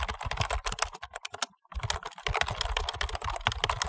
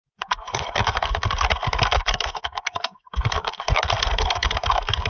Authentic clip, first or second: first